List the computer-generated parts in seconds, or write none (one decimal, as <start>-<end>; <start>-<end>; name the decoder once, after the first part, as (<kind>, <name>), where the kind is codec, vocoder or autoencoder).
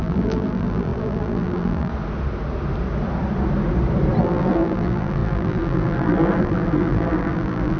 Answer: 0.0-1.9 (vocoder, BigVGAN v2); 4.2-7.8